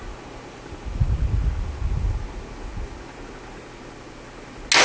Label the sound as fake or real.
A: real